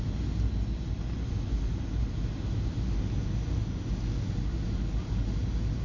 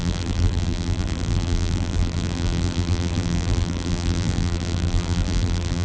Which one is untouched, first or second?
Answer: first